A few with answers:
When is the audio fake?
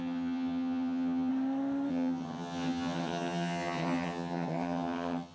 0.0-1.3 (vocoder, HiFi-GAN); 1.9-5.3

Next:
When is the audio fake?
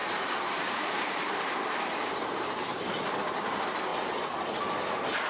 0.0-3.2 (vocoder, BigVGAN v2)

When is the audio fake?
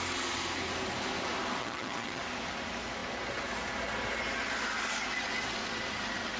1.6-2.2 (vocoder, HiFi-GAN)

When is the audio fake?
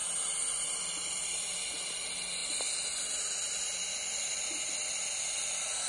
none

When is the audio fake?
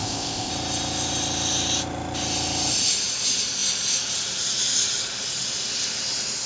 0.0-0.5 (codec, ZipCodec)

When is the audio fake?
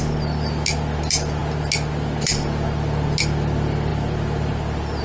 none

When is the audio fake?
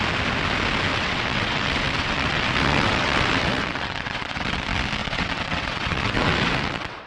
0.9-4.6 (vocoder, WaveNeXt); 5.0-7.1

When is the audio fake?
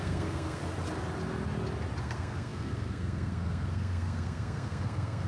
0.0-0.6 (codec, SNAC); 2.0-5.3